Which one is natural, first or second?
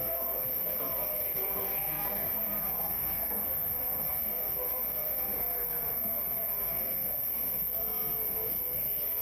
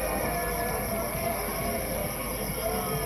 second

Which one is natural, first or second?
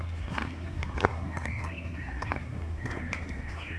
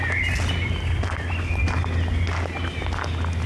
second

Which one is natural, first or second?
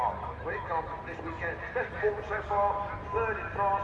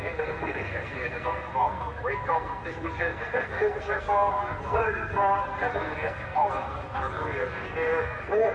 first